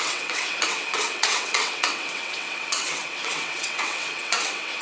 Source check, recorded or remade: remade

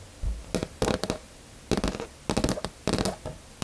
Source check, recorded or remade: recorded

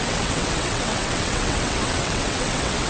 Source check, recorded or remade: remade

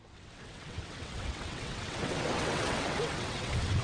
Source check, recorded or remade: remade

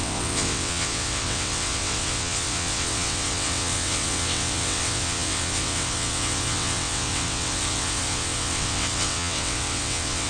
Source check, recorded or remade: remade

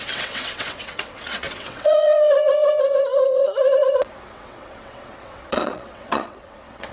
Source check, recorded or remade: remade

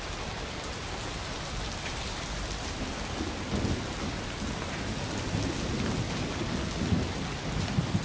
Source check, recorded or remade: recorded